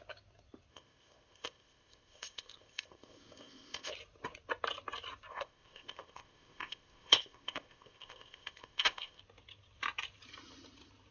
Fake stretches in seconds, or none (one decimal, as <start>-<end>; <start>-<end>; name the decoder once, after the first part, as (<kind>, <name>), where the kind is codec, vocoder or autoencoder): 0.7-3.9 (codec, ZipCodec); 5.3-9.2